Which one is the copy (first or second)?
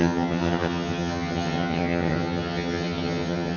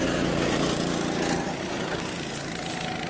first